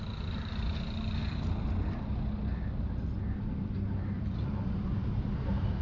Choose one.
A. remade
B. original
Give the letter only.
B